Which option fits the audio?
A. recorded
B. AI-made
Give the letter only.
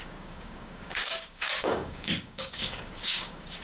B